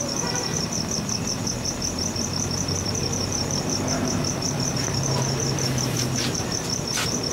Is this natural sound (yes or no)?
no